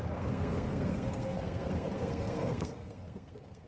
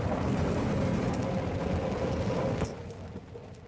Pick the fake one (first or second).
first